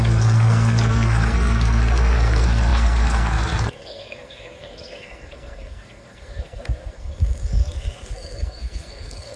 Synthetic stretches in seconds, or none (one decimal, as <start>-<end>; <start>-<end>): 0.0-9.4